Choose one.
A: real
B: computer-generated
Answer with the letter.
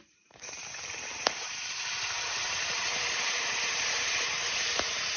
B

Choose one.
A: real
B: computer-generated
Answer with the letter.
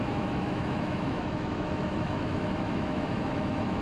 B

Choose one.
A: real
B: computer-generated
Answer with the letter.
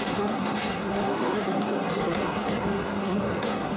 B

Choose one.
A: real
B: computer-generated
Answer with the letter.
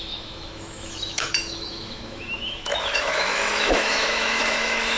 B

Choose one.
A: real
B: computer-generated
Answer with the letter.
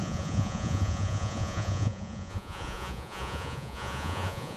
B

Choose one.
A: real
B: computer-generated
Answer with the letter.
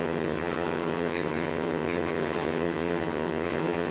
B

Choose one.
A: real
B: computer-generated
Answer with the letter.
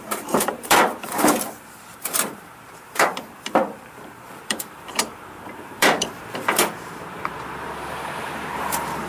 B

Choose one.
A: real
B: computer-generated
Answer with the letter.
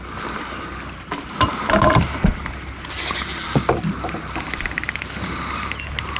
A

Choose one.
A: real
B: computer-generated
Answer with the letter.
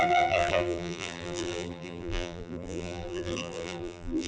B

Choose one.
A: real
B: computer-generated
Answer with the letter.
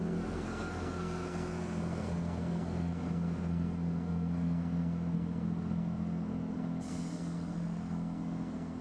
B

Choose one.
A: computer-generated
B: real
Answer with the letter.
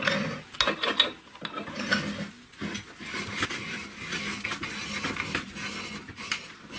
B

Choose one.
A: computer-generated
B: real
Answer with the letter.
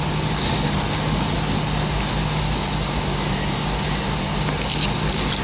B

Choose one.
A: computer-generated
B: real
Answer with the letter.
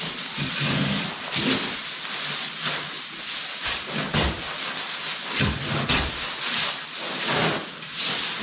B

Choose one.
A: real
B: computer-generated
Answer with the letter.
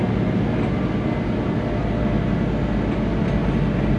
A